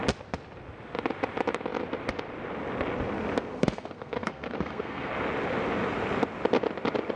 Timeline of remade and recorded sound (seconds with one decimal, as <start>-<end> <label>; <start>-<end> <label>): 0.0-3.5 recorded; 3.5-5.1 remade; 5.1-7.2 recorded